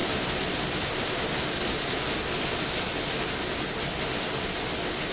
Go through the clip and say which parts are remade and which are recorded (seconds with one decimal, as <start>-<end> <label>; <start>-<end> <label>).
0.0-5.1 recorded